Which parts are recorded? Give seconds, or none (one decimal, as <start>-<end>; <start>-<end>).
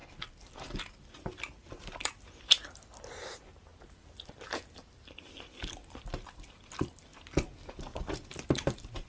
0.0-0.5; 3.7-4.3; 7.1-8.1